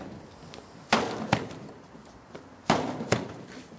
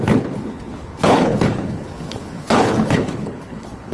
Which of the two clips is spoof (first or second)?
second